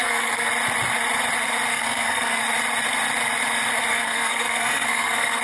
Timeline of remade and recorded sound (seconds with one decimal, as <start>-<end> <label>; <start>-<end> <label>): 0.0-0.5 remade; 0.5-1.7 recorded; 1.7-2.4 remade; 2.4-3.9 recorded; 3.9-5.4 remade